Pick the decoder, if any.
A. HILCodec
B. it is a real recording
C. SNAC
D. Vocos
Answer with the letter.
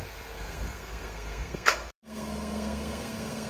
C